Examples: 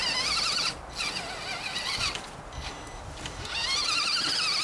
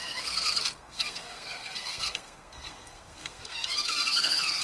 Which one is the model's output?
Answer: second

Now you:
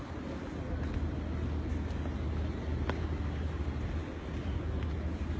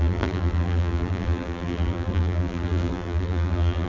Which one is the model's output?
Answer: second